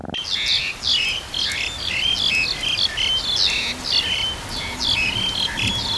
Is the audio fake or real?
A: real